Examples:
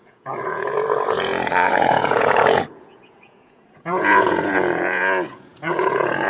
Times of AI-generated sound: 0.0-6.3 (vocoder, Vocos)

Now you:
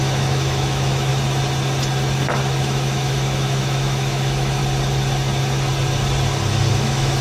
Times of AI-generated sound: 0.0-1.1 (autoencoder, DAC-VAE); 2.6-4.6; 6.7-7.2

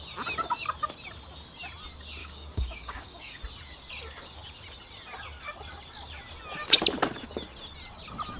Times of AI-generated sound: 2.2-3.4 (codec, DAC)

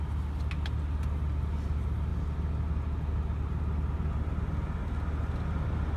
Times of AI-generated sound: none